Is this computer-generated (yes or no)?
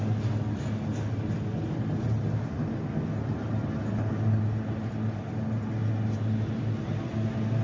no